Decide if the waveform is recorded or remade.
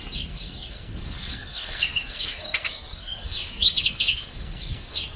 remade